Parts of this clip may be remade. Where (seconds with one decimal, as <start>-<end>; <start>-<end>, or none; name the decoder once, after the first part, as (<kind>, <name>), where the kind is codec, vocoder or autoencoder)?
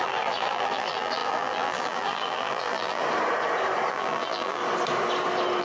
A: 0.0-3.0 (vocoder, BigVGAN v2); 3.9-4.6